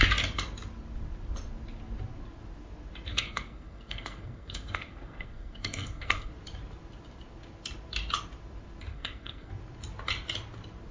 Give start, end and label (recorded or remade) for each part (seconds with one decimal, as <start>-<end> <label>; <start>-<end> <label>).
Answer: 0.0-3.1 recorded; 3.1-6.3 remade; 6.3-8.9 recorded; 8.9-9.5 remade; 9.5-10.9 recorded